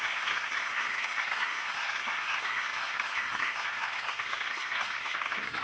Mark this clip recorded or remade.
remade